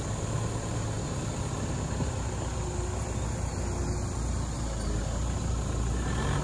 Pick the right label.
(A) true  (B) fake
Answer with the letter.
A